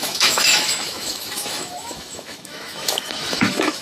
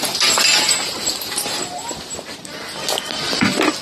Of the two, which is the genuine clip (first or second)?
second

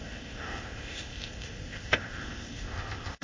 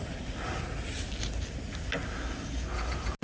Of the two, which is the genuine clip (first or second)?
second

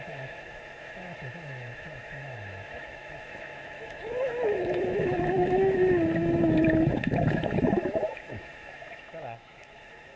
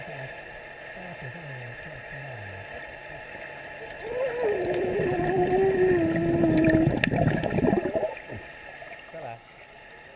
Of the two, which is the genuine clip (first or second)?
second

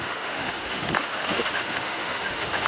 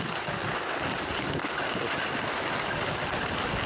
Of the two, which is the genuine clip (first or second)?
second